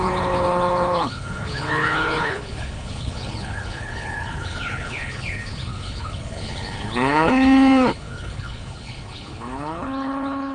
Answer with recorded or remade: remade